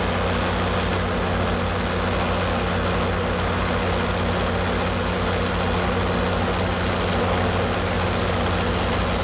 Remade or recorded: recorded